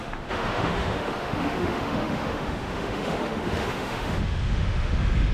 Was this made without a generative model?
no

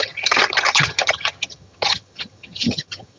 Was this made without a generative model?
no